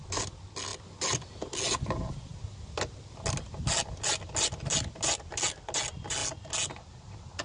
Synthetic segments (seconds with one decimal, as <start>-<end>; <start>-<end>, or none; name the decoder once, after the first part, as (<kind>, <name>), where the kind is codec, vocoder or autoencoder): none